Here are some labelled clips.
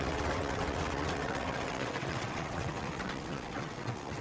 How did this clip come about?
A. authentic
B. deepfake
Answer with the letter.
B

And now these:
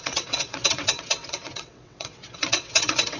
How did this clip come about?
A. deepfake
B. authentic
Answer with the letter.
A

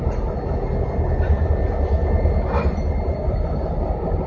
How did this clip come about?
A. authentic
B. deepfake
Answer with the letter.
A